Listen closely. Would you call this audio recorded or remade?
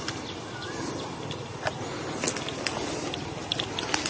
recorded